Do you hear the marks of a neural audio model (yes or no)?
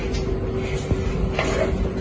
no